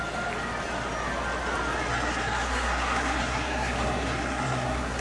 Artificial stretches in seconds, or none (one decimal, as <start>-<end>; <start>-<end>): 1.9-5.0